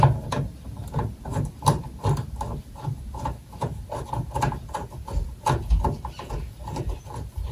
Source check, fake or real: real